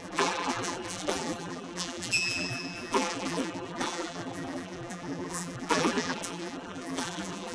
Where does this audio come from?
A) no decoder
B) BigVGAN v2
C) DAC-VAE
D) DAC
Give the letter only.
B